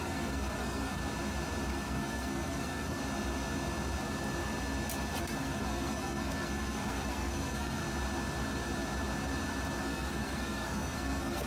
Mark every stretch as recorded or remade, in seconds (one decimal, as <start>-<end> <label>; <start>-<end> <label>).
0.0-1.0 remade; 1.0-1.7 recorded; 1.7-3.0 remade; 3.0-5.2 recorded; 5.2-7.8 remade; 7.8-9.8 recorded; 9.8-11.5 remade